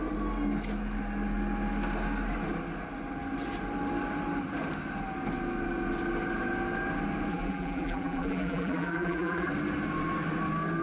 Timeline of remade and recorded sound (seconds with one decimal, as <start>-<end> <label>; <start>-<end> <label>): 0.0-7.3 recorded; 7.3-9.5 remade; 9.5-10.8 recorded